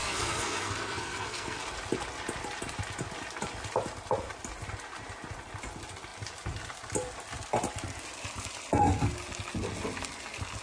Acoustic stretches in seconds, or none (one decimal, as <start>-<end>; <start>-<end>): 1.6-10.6